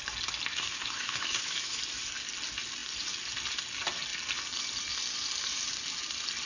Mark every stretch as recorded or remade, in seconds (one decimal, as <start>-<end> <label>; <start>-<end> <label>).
0.0-0.5 recorded; 0.5-1.8 remade; 1.8-6.5 recorded